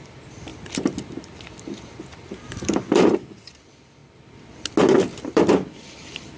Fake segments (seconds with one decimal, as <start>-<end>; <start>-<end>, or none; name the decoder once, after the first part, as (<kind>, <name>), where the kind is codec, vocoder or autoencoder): 0.0-0.5 (vocoder, BigVGAN v2); 2.0-4.0; 5.2-6.4